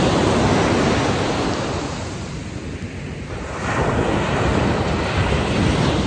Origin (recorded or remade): recorded